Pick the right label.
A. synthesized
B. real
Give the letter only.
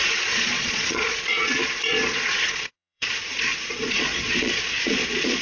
A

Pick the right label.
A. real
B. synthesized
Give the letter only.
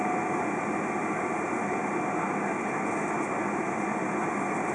A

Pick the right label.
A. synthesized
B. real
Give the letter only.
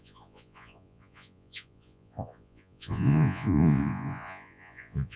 A